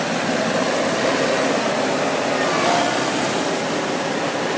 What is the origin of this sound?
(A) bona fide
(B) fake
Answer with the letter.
A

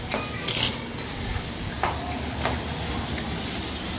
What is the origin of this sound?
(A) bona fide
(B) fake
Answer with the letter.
A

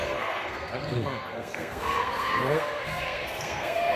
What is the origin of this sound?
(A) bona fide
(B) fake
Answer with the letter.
B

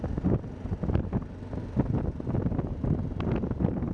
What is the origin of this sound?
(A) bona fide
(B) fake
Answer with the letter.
A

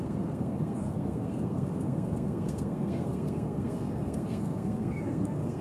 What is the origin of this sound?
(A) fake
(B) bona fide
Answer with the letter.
A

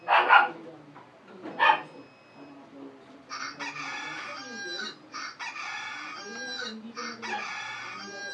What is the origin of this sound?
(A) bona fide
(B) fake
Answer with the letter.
A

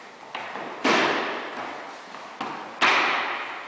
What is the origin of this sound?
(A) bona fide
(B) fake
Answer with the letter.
A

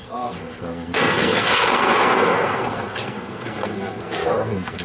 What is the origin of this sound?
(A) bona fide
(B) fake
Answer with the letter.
B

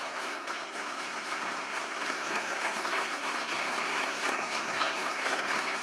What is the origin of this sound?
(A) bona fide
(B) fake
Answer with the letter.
B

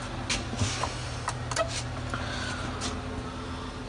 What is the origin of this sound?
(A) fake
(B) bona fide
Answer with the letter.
B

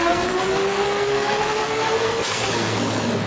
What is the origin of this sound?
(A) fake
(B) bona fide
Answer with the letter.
A